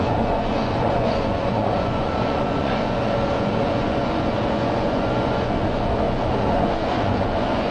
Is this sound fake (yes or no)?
yes